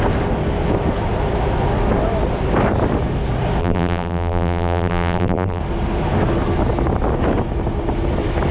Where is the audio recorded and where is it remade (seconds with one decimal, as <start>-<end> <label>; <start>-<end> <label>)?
0.0-3.6 recorded; 3.6-5.6 remade; 5.6-8.5 recorded